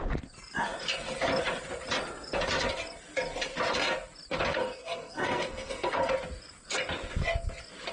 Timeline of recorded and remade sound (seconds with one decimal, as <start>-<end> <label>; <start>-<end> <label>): 0.0-4.5 recorded; 4.5-6.1 remade; 6.1-7.9 recorded